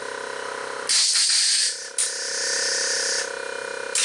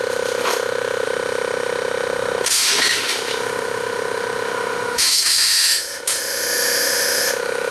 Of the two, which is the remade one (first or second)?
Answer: second